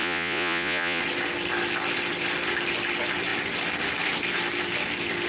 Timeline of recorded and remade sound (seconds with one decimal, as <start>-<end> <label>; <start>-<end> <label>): 0.0-1.0 remade; 1.0-5.3 recorded